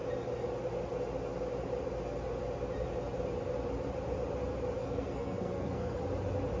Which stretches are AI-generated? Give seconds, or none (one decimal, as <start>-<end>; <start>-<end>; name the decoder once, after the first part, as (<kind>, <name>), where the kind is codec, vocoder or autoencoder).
4.8-6.0 (codec, SNAC)